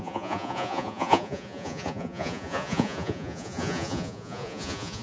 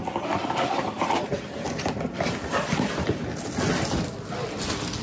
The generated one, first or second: first